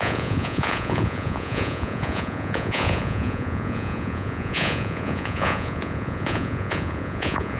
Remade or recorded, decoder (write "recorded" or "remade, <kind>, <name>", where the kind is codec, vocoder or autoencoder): remade, vocoder, Vocos